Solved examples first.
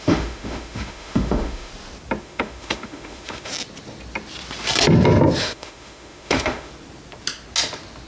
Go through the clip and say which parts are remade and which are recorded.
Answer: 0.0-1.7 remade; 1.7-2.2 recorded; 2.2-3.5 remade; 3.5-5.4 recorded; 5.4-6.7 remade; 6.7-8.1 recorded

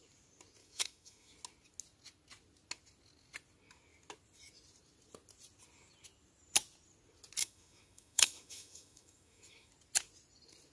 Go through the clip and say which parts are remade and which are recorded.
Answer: 0.0-0.6 recorded; 0.6-1.3 remade; 1.3-7.4 recorded; 7.4-9.7 remade; 9.7-10.7 recorded